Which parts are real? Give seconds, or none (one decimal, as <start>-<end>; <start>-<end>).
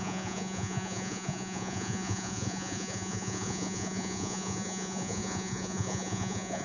none